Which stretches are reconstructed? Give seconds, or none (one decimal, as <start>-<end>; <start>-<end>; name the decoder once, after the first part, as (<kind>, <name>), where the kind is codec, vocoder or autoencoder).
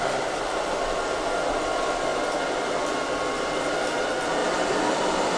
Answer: 2.1-3.2 (vocoder, BigVGAN v2); 4.4-5.4